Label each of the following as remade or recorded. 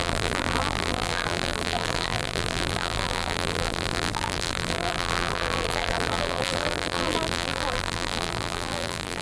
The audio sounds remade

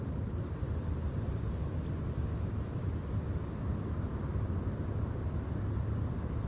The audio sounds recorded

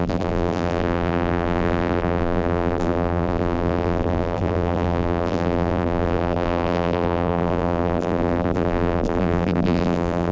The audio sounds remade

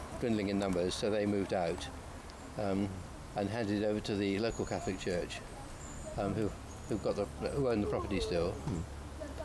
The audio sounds recorded